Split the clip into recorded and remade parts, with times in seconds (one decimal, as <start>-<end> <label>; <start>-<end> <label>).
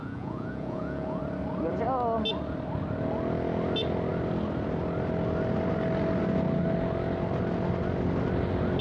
0.0-1.2 remade; 1.2-8.8 recorded